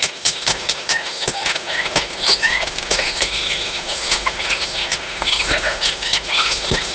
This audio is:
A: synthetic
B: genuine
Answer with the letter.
A